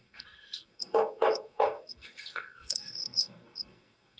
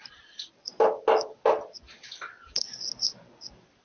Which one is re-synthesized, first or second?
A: first